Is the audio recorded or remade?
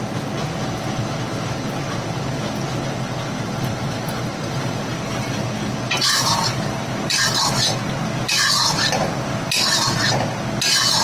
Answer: recorded